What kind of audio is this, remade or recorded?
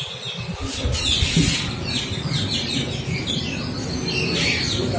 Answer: recorded